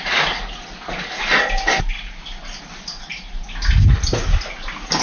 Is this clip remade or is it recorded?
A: recorded